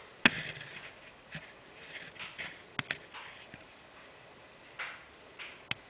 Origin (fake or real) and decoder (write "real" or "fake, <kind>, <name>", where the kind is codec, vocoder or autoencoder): real